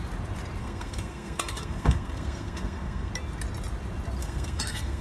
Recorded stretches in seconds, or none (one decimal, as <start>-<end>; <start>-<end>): 0.0-0.6; 3.1-4.2